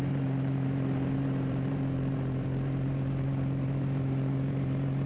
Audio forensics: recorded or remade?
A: remade